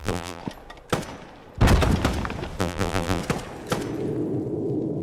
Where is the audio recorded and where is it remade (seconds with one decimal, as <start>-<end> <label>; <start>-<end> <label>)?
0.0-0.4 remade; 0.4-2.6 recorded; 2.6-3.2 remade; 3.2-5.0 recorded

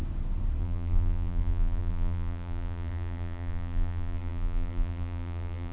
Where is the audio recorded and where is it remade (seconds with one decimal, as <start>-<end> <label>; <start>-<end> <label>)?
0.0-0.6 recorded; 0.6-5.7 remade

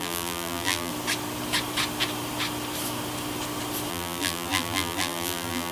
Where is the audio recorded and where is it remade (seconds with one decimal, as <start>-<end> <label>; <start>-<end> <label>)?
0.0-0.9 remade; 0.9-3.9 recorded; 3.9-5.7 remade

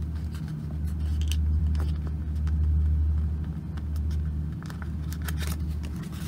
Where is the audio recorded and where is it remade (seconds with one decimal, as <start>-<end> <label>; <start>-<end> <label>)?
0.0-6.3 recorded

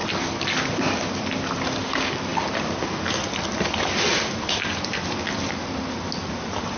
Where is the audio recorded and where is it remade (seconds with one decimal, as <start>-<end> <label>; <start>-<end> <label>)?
0.0-2.3 recorded; 2.3-2.9 remade; 2.9-6.8 recorded